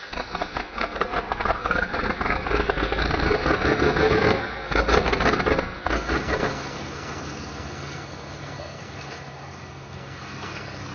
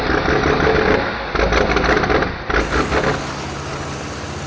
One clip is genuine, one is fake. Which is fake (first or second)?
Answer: first